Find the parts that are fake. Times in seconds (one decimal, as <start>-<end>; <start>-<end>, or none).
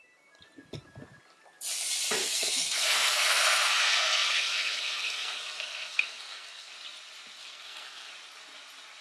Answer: 2.2-6.7; 7.4-8.1